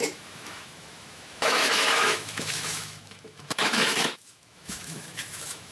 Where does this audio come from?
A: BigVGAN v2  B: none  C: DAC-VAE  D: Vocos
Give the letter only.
C